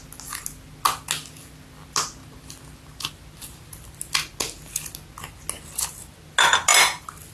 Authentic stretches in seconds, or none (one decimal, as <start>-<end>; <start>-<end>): 0.0-7.3